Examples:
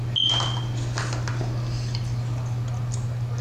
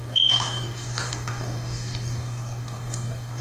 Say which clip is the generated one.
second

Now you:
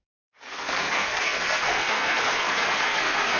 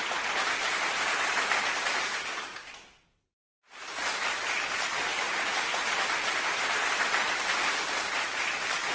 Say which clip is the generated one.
first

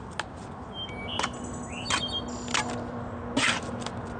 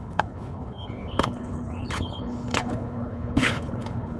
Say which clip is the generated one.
second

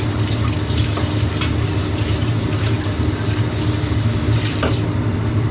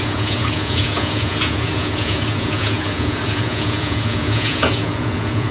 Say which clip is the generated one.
second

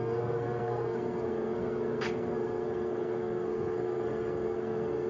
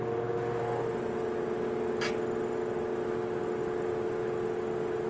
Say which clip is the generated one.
first